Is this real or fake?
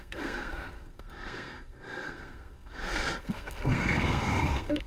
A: fake